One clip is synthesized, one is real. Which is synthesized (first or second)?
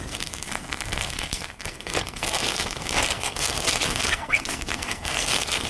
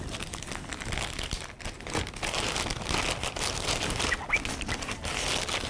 first